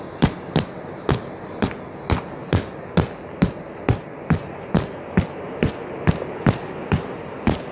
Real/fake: real